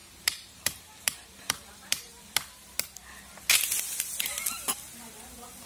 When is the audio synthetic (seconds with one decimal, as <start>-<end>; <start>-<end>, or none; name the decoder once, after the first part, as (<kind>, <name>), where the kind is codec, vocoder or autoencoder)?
0.0-2.1 (vocoder, BigVGAN v2)